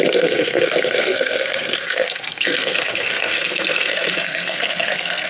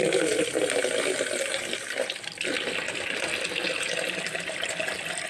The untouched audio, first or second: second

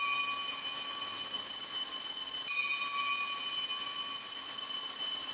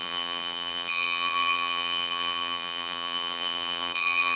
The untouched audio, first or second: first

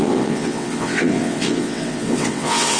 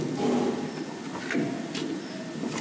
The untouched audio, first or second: second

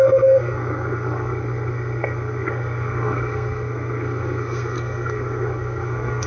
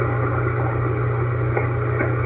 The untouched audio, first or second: second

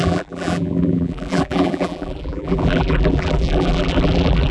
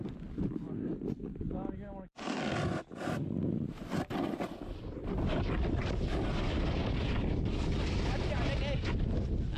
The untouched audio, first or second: second